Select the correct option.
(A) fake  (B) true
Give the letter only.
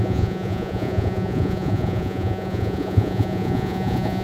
A